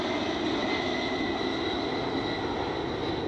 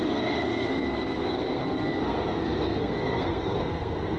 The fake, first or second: second